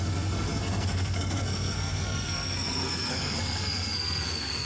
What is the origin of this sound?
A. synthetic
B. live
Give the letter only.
A